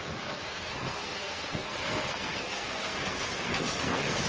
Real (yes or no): no